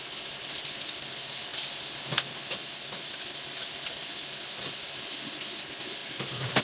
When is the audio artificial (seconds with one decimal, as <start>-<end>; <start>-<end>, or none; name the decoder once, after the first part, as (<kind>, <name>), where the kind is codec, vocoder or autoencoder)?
6.0-6.6 (vocoder, BigVGAN v2)